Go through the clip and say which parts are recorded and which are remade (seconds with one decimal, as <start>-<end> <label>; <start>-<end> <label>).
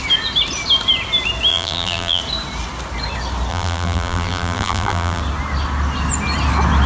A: 0.0-1.5 recorded; 1.5-2.2 remade; 2.2-3.5 recorded; 3.5-5.2 remade; 5.2-6.9 recorded